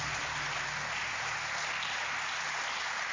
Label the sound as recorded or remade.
recorded